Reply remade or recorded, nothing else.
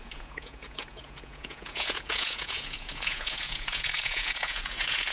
remade